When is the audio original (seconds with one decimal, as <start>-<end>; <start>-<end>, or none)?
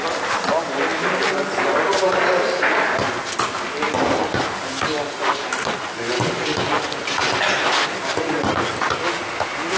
0.0-9.8